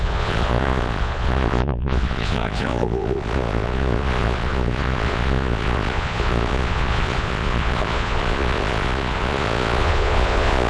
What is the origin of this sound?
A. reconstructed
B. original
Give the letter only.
A